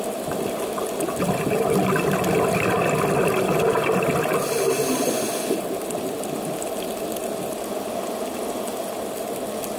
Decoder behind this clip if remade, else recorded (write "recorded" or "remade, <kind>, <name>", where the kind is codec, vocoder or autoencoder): recorded